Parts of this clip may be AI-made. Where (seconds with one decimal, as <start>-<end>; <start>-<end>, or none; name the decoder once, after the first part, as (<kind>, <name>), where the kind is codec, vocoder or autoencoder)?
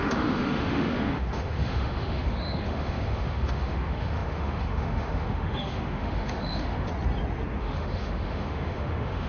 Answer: 0.0-6.9 (autoencoder, DAC-VAE); 7.6-9.3